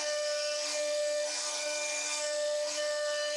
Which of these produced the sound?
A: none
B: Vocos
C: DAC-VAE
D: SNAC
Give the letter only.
D